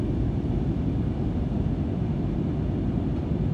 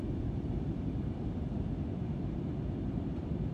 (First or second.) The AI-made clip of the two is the second